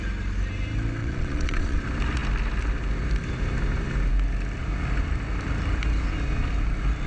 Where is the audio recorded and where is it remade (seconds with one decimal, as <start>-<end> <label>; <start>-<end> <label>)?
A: 0.0-1.0 recorded; 1.0-1.8 remade; 1.8-7.1 recorded